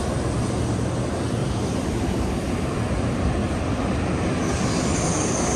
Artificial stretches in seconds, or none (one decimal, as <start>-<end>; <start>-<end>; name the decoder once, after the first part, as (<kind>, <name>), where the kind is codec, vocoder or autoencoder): 1.4-2.0 (vocoder, BigVGAN v2)